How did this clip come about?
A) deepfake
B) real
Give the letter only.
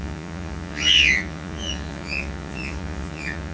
A